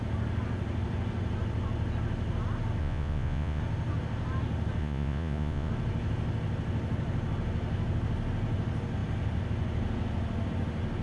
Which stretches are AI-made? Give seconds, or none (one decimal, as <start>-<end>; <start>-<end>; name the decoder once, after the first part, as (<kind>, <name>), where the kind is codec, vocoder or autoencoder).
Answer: 2.8-3.6 (vocoder, Vocos); 4.8-5.7